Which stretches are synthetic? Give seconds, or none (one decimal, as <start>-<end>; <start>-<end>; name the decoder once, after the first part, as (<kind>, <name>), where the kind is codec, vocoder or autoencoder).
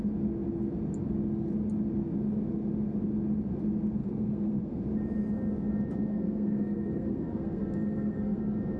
4.0-4.8 (codec, SNAC); 6.1-8.4